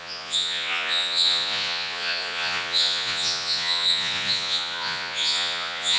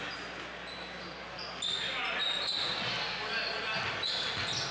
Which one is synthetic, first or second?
first